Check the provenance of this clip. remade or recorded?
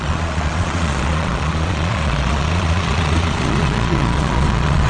remade